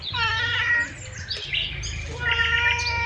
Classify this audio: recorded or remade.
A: recorded